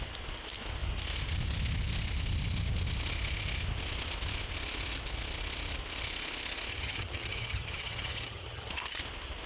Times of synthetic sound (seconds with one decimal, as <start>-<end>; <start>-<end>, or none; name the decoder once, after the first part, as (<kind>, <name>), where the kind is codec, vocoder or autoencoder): 6.7-8.7 (vocoder, HiFi-GAN)